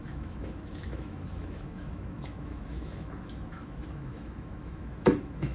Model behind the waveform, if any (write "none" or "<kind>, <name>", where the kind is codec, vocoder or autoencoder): autoencoder, DAC-VAE